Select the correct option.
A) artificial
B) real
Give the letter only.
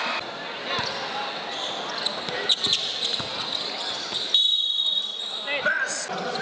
B